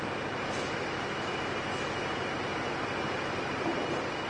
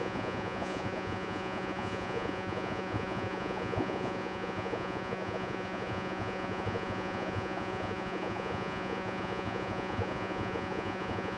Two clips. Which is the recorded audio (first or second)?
first